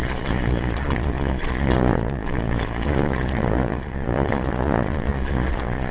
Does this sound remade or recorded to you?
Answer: remade